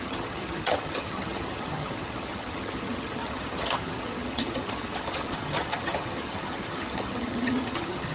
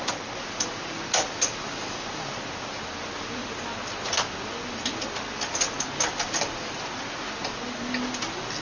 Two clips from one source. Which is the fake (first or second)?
first